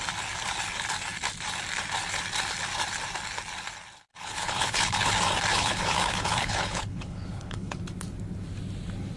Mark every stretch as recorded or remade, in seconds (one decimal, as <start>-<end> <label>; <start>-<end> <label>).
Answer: 0.0-4.1 recorded; 4.1-5.1 remade; 5.1-5.5 recorded; 5.5-7.8 remade; 7.8-9.2 recorded